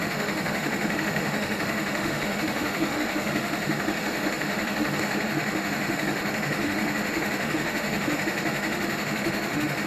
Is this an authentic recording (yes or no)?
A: no